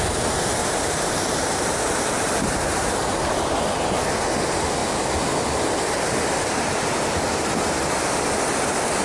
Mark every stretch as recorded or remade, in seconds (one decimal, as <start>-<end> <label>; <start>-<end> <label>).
0.0-0.6 recorded; 0.6-3.4 remade; 3.4-9.0 recorded